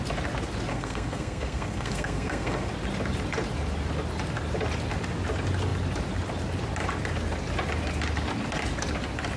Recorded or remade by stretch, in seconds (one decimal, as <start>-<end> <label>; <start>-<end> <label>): 0.0-0.7 recorded; 0.7-2.7 remade; 2.7-9.4 recorded